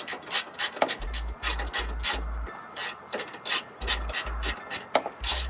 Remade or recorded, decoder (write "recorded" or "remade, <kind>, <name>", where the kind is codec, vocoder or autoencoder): recorded